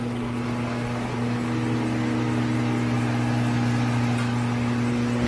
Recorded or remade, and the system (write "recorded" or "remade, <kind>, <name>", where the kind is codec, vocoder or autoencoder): recorded